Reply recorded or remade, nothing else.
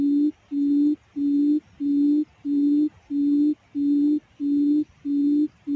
recorded